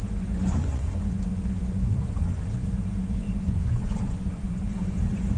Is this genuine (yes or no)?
no